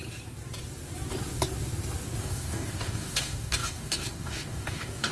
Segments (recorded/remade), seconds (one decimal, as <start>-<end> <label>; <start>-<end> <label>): 0.0-2.2 recorded; 2.2-5.1 remade